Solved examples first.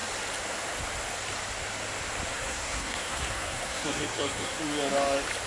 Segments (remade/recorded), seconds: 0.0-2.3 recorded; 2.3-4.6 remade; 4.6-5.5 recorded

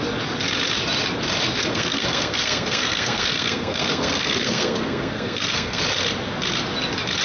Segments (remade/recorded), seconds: 0.0-1.7 recorded; 1.7-5.8 remade; 5.8-7.2 recorded

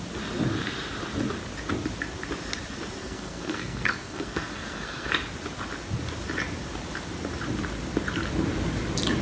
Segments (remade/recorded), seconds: 0.0-3.0 recorded; 3.0-5.1 remade; 5.1-9.2 recorded

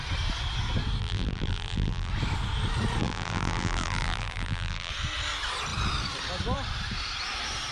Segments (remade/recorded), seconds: 0.0-1.0 recorded; 1.0-2.1 remade; 2.1-3.0 recorded; 3.0-4.9 remade; 4.9-7.7 recorded

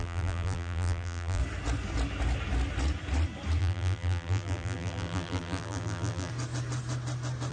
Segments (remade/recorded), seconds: 0.0-1.4 remade; 1.4-3.6 recorded; 3.6-6.3 remade; 6.3-7.5 recorded

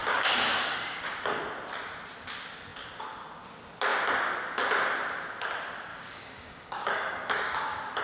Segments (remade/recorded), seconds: 0.0-1.4 remade; 1.4-5.9 recorded; 5.9-8.0 remade

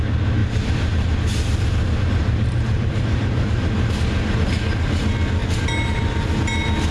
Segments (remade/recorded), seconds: 0.0-0.4 recorded; 0.4-4.0 remade; 4.0-6.9 recorded

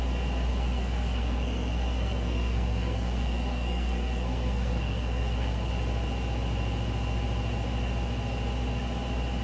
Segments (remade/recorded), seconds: 0.0-0.5 recorded; 0.5-5.7 remade; 5.7-9.4 recorded